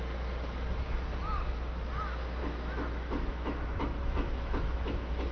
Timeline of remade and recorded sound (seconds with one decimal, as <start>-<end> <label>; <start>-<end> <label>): 0.0-2.4 recorded; 2.4-5.3 remade